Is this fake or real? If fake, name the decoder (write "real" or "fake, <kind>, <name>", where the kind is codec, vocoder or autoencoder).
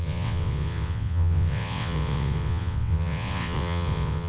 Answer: fake, vocoder, WaveNeXt